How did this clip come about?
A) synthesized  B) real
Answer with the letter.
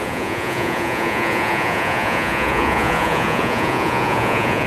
A